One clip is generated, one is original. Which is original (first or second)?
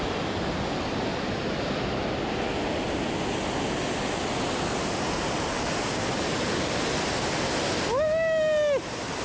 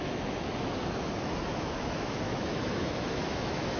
first